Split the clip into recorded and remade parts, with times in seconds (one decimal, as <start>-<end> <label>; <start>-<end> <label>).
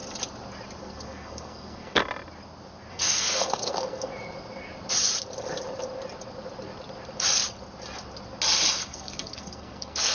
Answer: 0.0-0.8 recorded; 0.8-2.0 remade; 2.0-2.9 recorded; 2.9-4.1 remade; 4.1-8.7 recorded; 8.7-10.1 remade